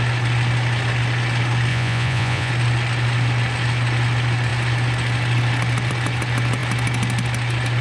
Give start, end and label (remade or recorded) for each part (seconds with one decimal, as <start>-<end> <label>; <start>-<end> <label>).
0.0-1.7 recorded; 1.7-2.5 remade; 2.5-7.8 recorded